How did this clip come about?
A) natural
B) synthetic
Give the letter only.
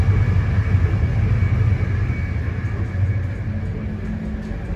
A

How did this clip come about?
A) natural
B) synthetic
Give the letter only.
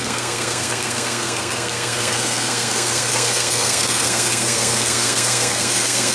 B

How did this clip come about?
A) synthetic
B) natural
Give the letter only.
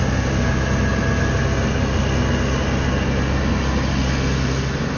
B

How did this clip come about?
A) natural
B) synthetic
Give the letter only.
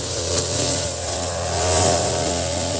B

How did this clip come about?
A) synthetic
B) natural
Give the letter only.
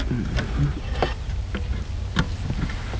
B